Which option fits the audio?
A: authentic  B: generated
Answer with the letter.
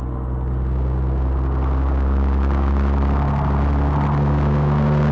A